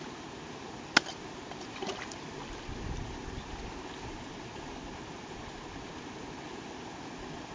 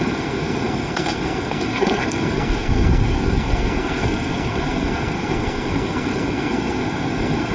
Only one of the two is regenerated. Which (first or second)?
second